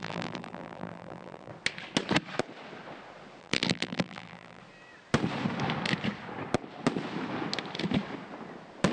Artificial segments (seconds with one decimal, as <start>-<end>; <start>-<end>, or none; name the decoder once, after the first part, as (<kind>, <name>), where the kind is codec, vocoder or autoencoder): 0.0-1.5 (vocoder, BigVGAN v2); 3.4-4.6